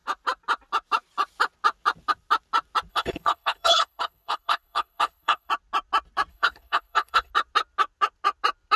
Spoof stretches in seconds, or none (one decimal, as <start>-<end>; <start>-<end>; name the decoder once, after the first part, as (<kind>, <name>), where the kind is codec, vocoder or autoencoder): 2.9-5.5 (codec, HILCodec); 6.3-7.3